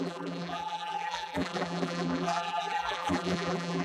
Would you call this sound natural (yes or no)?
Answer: no